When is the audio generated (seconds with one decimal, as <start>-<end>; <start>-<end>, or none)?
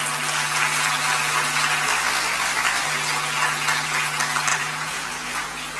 4.5-5.8